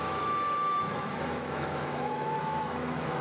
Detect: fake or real fake